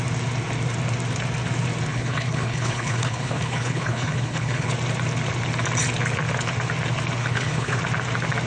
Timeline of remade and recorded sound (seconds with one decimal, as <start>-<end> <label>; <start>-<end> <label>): 0.0-1.9 recorded; 1.9-4.7 remade; 4.7-7.2 recorded; 7.2-7.8 remade; 7.8-8.5 recorded